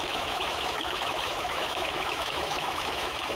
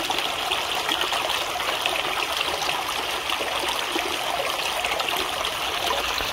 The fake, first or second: first